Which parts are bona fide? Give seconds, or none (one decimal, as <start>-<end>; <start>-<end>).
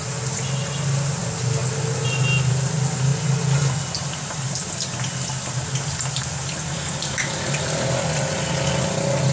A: 0.0-9.3